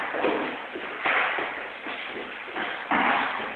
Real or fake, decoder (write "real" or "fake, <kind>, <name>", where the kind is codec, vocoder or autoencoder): real